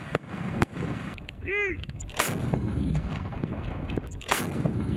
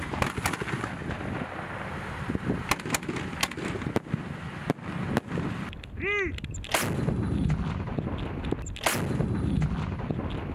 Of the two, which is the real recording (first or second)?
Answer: second